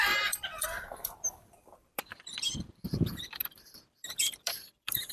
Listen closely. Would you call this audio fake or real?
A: fake